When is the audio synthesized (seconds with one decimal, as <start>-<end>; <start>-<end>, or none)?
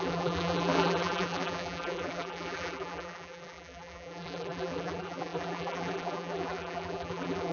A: 0.0-7.5